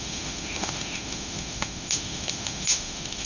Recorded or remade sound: remade